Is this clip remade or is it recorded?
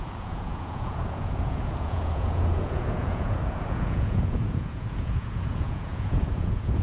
remade